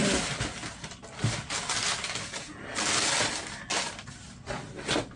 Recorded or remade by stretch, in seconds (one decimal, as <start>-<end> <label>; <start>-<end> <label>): 0.0-5.2 recorded